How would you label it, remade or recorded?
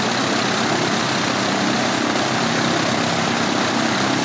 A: recorded